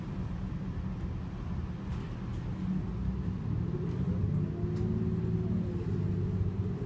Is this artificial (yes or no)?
no